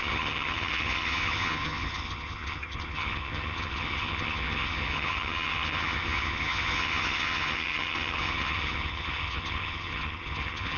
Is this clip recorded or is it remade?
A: remade